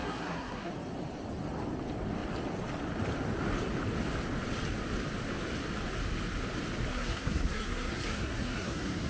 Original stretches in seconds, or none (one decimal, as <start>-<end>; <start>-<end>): 0.7-6.9